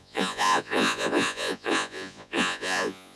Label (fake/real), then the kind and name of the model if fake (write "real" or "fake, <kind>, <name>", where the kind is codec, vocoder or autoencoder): fake, vocoder, Vocos